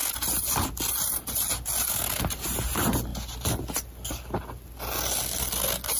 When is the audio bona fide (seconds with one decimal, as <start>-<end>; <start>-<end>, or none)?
0.0-6.0